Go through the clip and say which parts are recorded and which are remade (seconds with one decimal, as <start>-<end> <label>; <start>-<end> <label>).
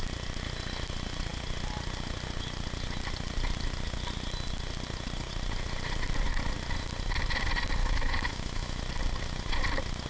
0.0-7.8 recorded; 7.8-8.8 remade; 8.8-10.1 recorded